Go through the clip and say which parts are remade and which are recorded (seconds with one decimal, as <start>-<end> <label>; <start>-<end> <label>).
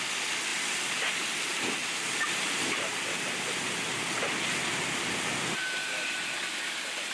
0.0-0.5 recorded; 0.5-1.0 remade; 1.0-1.8 recorded; 1.8-5.9 remade; 5.9-7.1 recorded